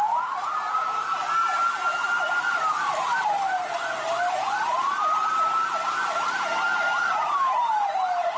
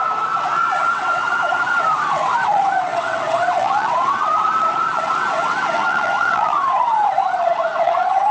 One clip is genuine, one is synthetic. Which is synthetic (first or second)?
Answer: second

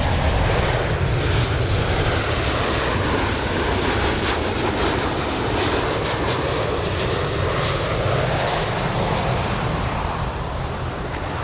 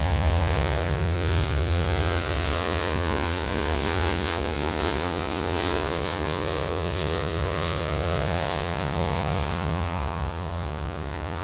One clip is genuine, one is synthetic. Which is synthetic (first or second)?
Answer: second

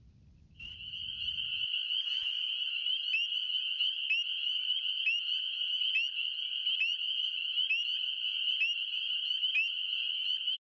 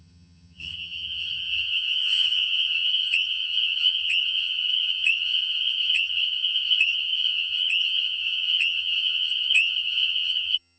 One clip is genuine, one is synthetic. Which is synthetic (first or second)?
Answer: second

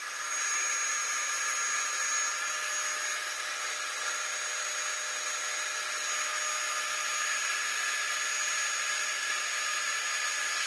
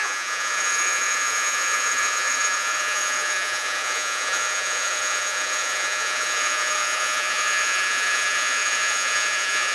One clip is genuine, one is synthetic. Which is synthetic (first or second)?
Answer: second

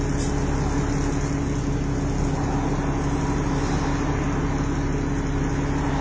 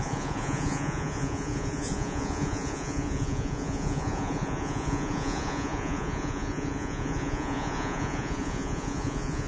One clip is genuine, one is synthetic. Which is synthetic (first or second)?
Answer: second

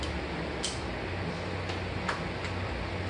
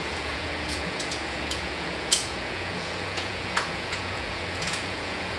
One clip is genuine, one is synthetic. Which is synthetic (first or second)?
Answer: second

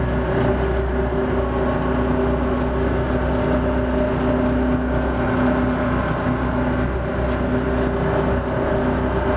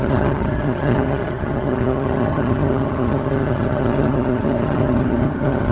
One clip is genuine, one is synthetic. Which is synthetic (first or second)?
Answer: second